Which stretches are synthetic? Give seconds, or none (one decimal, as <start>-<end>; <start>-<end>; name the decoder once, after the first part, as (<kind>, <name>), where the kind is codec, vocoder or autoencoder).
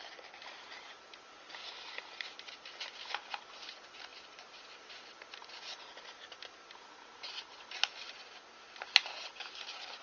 none